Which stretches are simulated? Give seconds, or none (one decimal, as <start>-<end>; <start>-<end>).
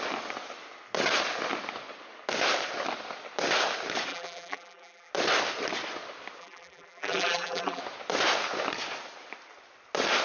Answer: 4.1-5.1; 6.4-7.8